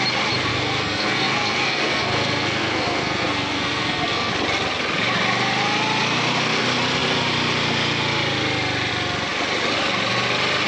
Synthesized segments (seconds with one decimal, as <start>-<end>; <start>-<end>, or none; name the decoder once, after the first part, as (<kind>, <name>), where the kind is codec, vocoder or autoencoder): 0.5-4.3 (codec, SNAC)